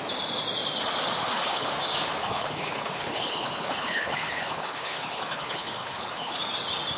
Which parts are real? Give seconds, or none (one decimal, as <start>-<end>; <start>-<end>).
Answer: 0.0-1.2; 1.7-2.2; 6.4-7.0